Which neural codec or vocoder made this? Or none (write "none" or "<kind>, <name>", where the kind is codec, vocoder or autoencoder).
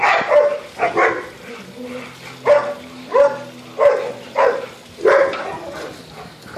none